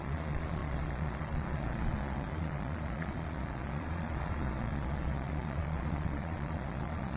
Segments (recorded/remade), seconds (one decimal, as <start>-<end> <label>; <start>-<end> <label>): 0.0-7.2 remade